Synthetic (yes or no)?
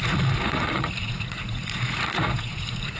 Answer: yes